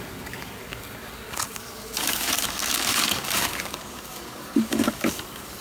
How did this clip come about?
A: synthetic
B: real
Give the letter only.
A